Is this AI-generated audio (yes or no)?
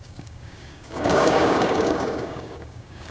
yes